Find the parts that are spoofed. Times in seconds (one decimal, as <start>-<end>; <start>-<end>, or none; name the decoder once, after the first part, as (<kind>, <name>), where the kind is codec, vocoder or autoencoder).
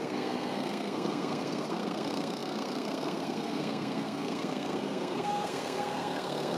0.0-6.6 (codec, SNAC)